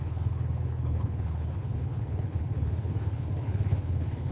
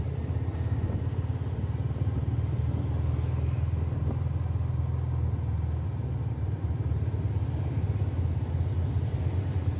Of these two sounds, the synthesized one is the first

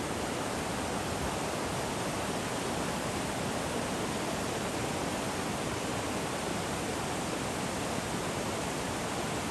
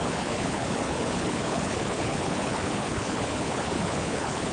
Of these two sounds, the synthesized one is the second